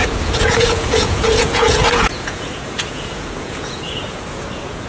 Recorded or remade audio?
remade